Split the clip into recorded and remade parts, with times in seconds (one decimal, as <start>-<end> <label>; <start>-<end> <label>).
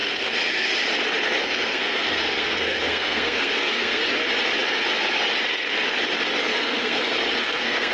0.0-0.7 remade; 0.7-1.4 recorded; 1.4-4.0 remade; 4.0-6.5 recorded; 6.5-7.0 remade; 7.0-7.4 recorded; 7.4-7.9 remade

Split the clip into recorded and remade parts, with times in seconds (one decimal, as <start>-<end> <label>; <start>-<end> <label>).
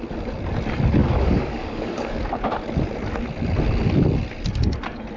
0.0-1.0 recorded; 1.0-2.2 remade; 2.2-5.2 recorded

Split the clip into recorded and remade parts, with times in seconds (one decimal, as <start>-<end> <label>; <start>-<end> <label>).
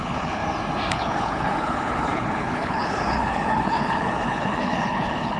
0.0-0.4 remade; 0.4-0.9 recorded; 0.9-5.4 remade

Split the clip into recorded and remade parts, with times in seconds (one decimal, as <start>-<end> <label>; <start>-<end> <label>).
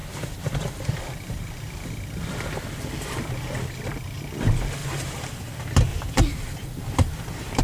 0.0-2.2 remade; 2.2-4.8 recorded; 4.8-5.5 remade; 5.5-5.9 recorded; 5.9-7.6 remade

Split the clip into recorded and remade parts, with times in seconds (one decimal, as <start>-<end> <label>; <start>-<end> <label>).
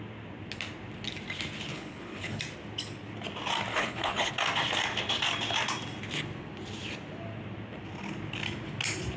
0.0-1.7 recorded; 1.7-2.4 remade; 2.4-3.7 recorded; 3.7-4.3 remade; 4.3-9.2 recorded